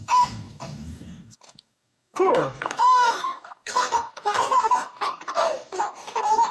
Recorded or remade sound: remade